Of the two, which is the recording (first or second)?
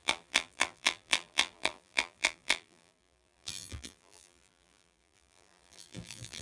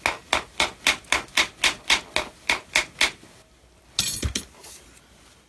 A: second